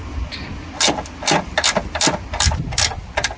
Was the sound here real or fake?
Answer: real